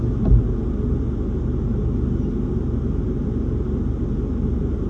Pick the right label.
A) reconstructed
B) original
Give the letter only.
B